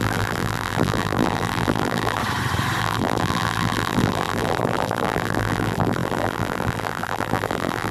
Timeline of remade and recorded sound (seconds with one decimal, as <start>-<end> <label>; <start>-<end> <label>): 0.0-2.2 remade; 2.2-2.8 recorded; 2.8-7.9 remade